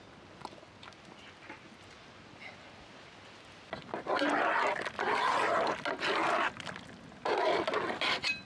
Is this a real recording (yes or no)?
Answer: yes